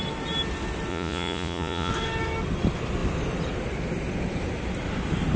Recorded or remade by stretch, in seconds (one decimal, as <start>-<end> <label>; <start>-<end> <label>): 0.0-0.9 recorded; 0.9-1.9 remade; 1.9-5.4 recorded